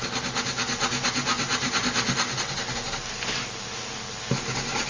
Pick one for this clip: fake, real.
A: real